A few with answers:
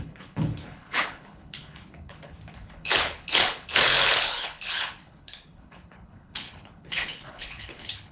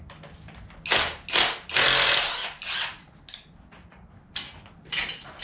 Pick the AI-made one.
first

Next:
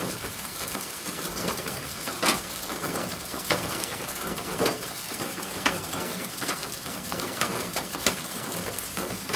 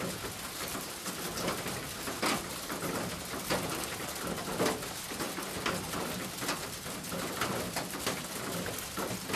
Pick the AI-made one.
first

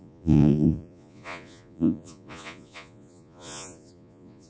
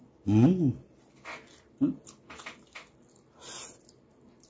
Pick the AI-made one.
first